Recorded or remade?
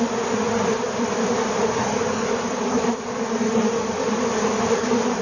remade